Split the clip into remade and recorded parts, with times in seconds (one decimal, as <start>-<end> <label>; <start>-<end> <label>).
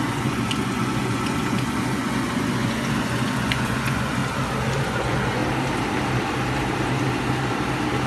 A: 0.0-4.2 remade; 4.2-4.8 recorded; 4.8-5.4 remade; 5.4-8.1 recorded